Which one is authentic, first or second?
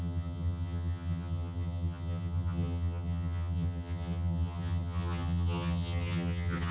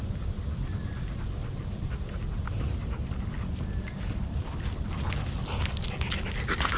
second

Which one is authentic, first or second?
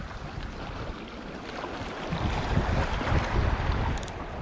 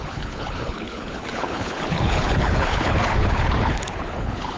first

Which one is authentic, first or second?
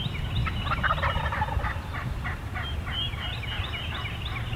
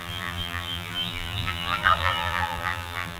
first